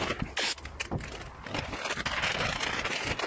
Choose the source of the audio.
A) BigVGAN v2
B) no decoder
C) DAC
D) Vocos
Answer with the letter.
B